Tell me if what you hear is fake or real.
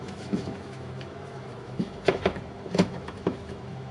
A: fake